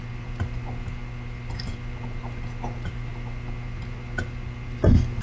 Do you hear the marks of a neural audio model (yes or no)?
no